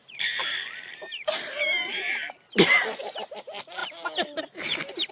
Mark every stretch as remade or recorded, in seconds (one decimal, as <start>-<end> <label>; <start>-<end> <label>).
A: 0.0-2.2 remade; 2.2-5.1 recorded